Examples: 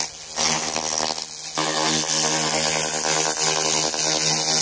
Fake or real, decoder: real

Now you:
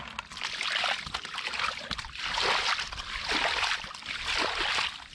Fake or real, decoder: real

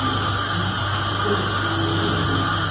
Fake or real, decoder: real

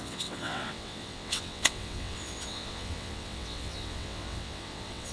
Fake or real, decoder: fake, vocoder, WaveNeXt